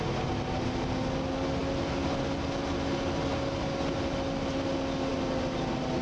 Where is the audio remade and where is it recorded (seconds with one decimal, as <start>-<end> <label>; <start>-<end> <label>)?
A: 0.0-6.0 recorded